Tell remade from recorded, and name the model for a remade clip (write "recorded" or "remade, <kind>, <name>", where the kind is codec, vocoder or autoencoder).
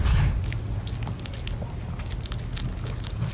recorded